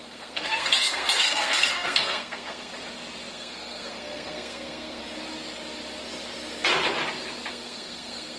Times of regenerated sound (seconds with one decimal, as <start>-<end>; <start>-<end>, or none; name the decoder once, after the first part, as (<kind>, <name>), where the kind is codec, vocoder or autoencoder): 0.0-2.7 (codec, SNAC); 3.3-5.0; 7.5-8.4